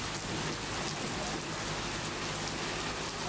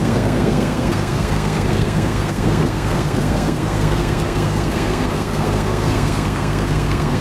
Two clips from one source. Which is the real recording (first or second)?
first